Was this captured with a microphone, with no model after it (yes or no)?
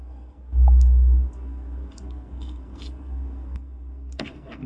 no